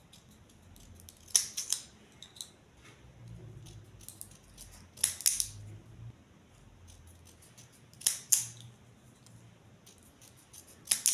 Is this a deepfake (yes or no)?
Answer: no